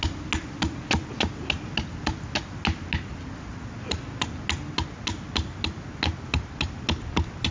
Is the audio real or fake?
real